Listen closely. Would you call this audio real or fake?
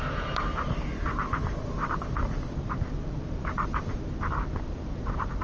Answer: real